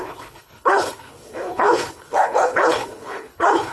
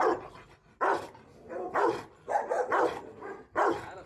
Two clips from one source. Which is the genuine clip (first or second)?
second